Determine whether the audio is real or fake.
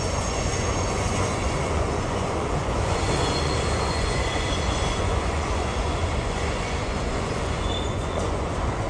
fake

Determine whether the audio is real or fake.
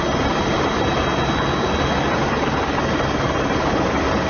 real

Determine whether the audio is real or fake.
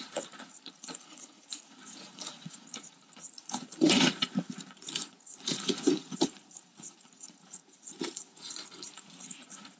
fake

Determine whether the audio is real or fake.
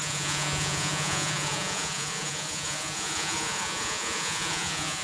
fake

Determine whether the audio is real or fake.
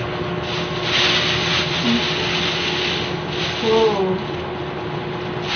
real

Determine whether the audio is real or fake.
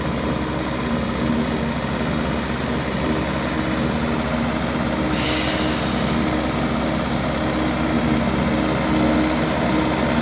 real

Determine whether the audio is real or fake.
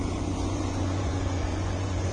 fake